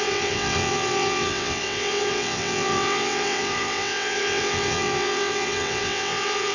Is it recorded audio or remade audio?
remade